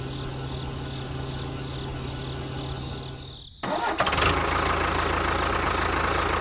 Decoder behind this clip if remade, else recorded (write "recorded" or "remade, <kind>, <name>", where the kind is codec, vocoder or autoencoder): recorded